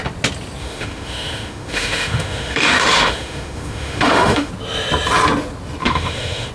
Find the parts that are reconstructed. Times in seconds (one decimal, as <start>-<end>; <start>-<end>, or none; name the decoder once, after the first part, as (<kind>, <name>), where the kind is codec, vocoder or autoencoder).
0.6-4.5 (autoencoder, DAC-VAE); 5.8-6.5